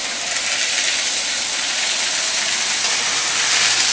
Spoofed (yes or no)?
no